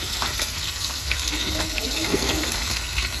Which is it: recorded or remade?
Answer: remade